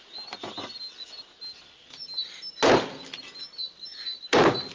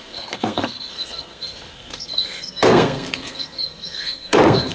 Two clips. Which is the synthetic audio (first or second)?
second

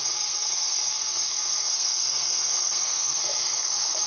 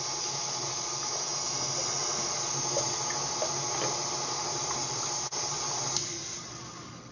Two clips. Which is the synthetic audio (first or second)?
first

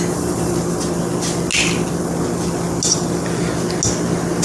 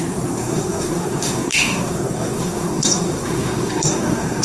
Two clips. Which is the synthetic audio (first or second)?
second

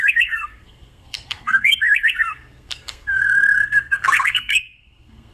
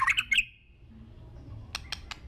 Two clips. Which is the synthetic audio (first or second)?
first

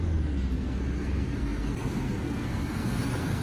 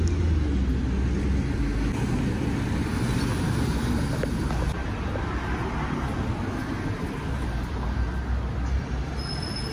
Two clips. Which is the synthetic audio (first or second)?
first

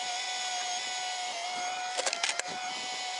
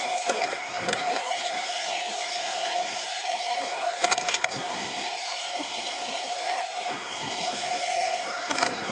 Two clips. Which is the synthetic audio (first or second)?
second